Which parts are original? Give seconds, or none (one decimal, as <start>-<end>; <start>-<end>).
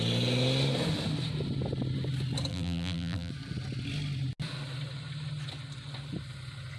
0.0-2.5; 3.3-6.8